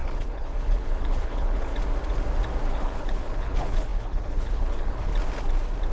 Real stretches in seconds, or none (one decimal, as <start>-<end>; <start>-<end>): 1.7-2.7; 5.1-5.9